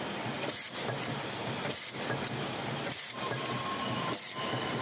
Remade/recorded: recorded